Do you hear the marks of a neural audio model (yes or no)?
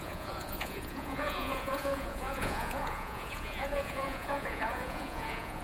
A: yes